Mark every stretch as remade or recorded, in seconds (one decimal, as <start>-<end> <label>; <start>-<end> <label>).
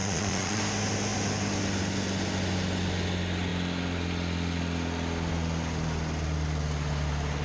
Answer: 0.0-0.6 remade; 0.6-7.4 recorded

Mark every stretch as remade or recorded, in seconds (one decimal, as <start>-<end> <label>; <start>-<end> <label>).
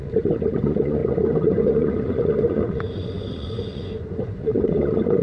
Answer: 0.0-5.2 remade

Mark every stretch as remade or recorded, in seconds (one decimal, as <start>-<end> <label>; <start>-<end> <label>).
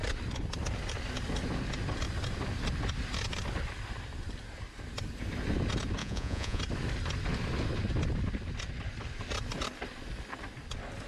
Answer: 0.0-6.0 recorded; 6.0-6.6 remade; 6.6-11.1 recorded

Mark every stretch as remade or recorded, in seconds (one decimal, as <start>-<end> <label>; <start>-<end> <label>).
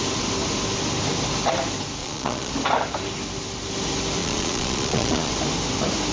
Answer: 0.0-2.0 recorded; 2.0-2.5 remade; 2.5-4.2 recorded; 4.2-5.3 remade; 5.3-6.1 recorded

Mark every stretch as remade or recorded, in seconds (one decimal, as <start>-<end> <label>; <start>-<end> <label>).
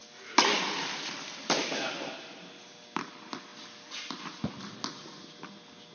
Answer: 0.0-5.9 recorded